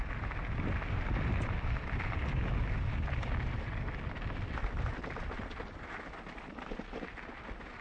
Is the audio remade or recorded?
recorded